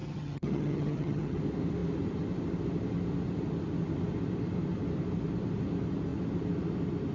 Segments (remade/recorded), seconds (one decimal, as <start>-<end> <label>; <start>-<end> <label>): 0.0-1.4 remade; 1.4-7.1 recorded